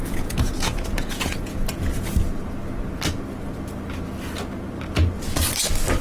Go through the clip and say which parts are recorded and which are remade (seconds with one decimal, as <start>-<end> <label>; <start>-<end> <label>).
0.0-2.2 remade; 2.2-6.0 recorded

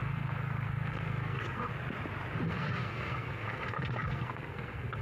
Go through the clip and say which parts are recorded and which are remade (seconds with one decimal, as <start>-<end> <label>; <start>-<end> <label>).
0.0-1.7 remade; 1.7-2.5 recorded; 2.5-5.0 remade

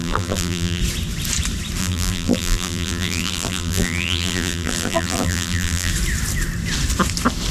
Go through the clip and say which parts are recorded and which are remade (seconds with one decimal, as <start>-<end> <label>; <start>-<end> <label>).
0.0-0.8 remade; 0.8-1.8 recorded; 1.8-5.9 remade; 5.9-7.5 recorded